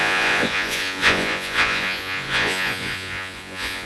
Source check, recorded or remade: remade